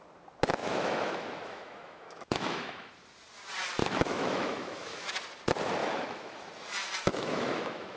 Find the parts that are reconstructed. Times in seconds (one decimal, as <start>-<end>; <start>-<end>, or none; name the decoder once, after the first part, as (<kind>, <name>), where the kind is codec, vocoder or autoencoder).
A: 0.6-2.9 (autoencoder, DAC-VAE); 3.8-5.1; 5.8-6.5; 7.1-8.0

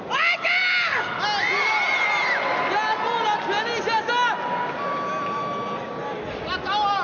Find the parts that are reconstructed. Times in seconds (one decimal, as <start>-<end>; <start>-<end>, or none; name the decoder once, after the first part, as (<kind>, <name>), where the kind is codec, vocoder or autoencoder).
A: none

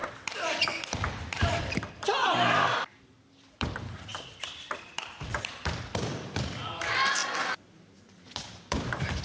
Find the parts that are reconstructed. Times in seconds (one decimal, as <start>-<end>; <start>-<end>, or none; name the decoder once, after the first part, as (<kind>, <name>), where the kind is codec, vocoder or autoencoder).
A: 0.0-7.2 (vocoder, BigVGAN v2); 8.1-9.2

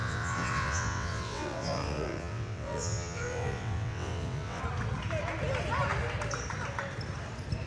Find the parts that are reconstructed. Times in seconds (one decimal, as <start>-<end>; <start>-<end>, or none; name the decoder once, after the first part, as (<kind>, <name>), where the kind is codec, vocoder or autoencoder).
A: 0.0-4.6 (vocoder, WaveNeXt)

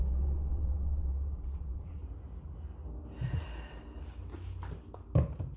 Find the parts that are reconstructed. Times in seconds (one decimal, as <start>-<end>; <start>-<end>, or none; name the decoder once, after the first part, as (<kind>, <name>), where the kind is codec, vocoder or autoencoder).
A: 0.0-2.0 (vocoder, WaveNeXt)